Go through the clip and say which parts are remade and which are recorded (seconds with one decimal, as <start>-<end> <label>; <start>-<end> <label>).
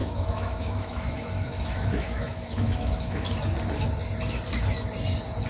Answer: 0.0-3.3 remade; 3.3-5.5 recorded